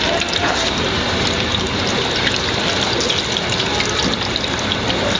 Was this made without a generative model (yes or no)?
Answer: yes